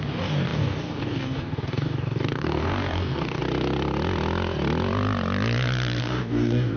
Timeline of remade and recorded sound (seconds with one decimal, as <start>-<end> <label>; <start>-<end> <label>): 0.0-3.4 remade; 3.4-6.0 recorded; 6.0-6.8 remade